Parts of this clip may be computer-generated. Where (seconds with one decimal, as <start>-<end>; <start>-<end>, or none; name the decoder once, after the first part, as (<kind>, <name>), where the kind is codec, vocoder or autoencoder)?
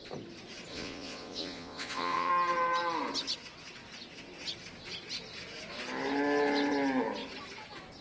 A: 0.7-2.3 (vocoder, Vocos)